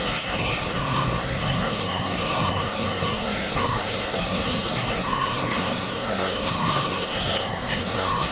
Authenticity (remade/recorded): remade